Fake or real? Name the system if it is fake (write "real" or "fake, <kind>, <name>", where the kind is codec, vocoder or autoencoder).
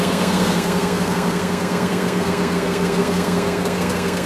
fake, codec, SNAC